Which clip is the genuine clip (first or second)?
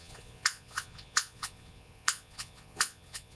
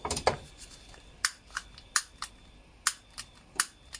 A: second